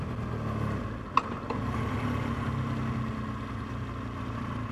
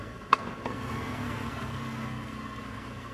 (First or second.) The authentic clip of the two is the first